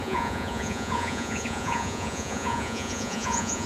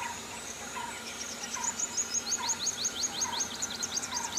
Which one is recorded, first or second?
second